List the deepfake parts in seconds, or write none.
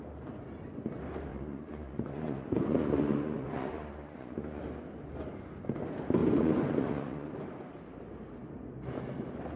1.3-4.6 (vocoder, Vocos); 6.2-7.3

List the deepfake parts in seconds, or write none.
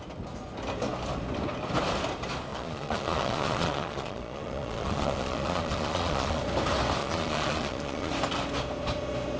2.5-6.4 (vocoder, Vocos); 7.0-8.1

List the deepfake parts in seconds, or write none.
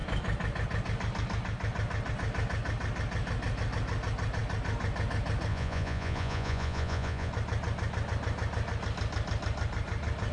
5.5-7.3 (vocoder, Vocos)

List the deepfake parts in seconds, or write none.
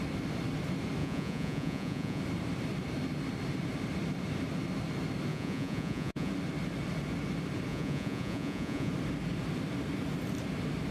1.0-2.2 (vocoder, Vocos); 5.3-6.3; 7.7-8.9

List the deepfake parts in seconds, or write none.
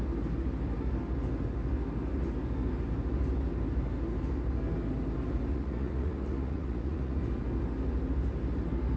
5.5-7.2 (vocoder, Vocos)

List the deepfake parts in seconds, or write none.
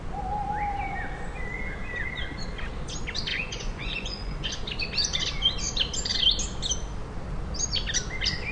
3.3-4.5 (vocoder, Vocos)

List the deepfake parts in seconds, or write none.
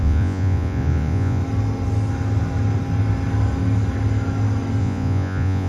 0.0-1.4 (vocoder, Vocos); 4.8-5.7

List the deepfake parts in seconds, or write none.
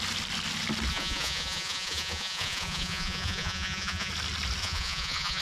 0.9-4.1 (vocoder, Vocos); 4.6-5.4